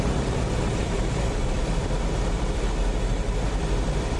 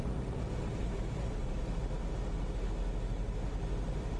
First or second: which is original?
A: second